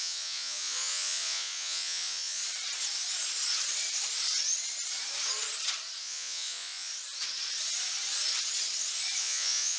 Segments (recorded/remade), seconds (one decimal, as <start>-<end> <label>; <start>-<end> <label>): 0.0-2.4 remade; 2.4-6.0 recorded; 6.0-6.9 remade; 6.9-9.2 recorded; 9.2-9.8 remade